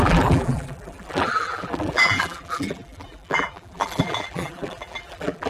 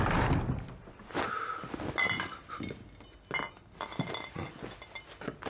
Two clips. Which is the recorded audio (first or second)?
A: second